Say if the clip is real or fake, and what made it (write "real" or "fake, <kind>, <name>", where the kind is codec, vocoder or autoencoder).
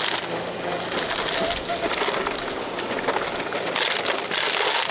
real